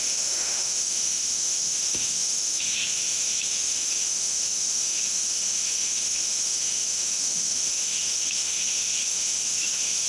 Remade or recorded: remade